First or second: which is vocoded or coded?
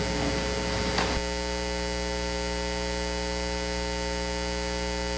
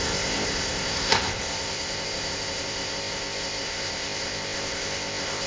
second